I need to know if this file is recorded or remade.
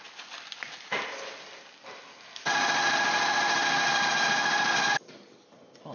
recorded